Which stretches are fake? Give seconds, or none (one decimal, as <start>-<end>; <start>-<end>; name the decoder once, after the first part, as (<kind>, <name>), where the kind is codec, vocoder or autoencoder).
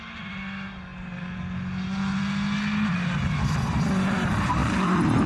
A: 4.6-5.3 (vocoder, BigVGAN v2)